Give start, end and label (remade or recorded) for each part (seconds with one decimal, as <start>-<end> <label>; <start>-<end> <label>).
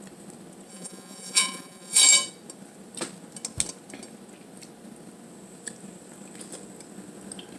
0.0-0.7 recorded; 0.7-2.0 remade; 2.0-7.6 recorded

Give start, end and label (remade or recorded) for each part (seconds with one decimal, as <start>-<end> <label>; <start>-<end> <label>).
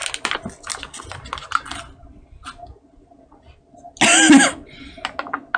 0.0-5.6 recorded